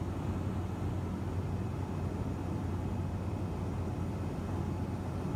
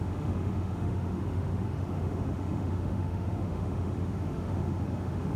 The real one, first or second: first